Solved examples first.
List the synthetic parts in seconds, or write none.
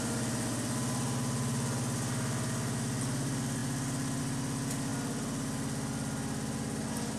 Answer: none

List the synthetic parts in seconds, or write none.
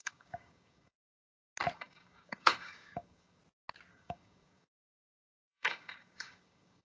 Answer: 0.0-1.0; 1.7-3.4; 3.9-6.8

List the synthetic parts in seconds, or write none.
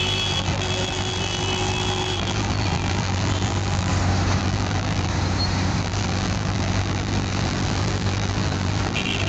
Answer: 0.0-3.9; 4.4-5.1; 5.8-9.3